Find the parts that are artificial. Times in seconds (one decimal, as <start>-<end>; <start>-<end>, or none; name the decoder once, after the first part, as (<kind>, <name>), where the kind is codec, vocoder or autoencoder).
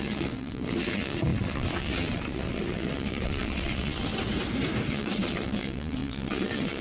0.0-4.1 (vocoder, WaveNeXt); 4.9-6.8